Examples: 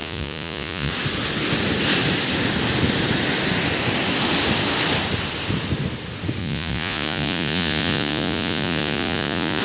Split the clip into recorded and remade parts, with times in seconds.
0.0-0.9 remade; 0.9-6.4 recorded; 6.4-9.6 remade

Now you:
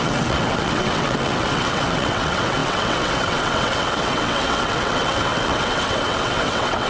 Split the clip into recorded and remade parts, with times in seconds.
0.0-6.9 remade

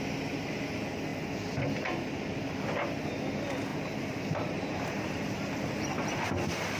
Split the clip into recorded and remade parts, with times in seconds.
0.0-3.7 recorded; 3.7-5.7 remade; 5.7-6.8 recorded